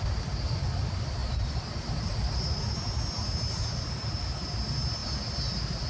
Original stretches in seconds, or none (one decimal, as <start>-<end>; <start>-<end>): 0.0-5.9